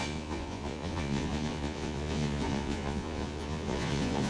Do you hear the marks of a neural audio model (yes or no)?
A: yes